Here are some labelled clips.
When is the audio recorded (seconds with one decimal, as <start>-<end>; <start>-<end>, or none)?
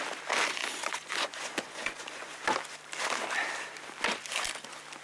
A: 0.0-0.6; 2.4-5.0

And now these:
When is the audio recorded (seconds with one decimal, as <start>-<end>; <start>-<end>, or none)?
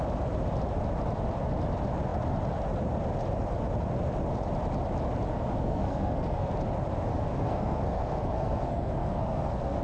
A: 0.0-5.3; 6.5-7.1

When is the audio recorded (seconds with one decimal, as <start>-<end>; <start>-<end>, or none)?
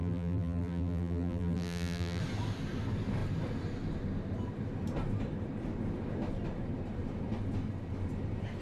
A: 2.2-8.6